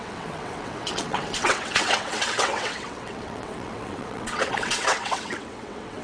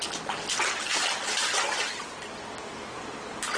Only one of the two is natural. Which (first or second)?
second